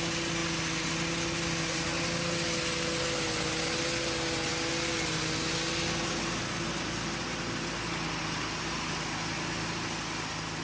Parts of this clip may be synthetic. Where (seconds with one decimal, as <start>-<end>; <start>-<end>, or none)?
none